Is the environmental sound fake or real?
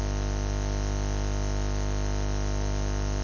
real